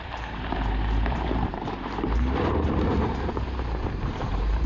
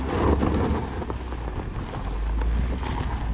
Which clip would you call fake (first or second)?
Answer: first